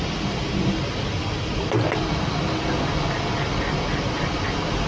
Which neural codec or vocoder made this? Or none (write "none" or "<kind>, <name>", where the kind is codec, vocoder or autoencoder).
none